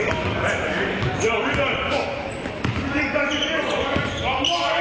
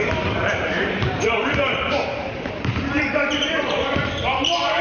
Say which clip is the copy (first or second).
second